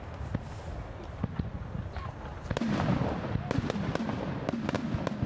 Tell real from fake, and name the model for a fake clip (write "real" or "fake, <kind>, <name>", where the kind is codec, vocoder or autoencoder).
real